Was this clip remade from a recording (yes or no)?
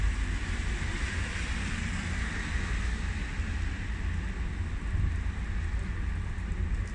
no